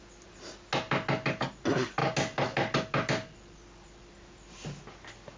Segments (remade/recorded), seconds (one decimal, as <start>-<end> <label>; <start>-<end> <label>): 0.0-5.4 recorded